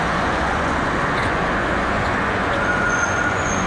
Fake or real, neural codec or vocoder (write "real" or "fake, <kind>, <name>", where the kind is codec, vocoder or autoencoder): fake, vocoder, Vocos